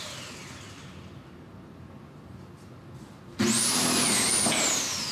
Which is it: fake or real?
real